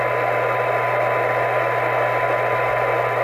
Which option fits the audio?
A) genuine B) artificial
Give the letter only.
A